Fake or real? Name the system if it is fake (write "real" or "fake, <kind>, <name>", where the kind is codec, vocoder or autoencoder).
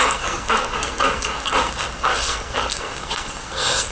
fake, codec, SNAC